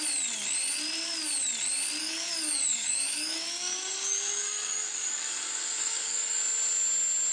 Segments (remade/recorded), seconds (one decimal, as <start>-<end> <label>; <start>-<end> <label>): 0.0-2.0 recorded; 2.0-6.4 remade; 6.4-7.3 recorded